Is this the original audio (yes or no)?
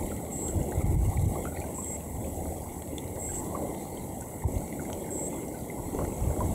no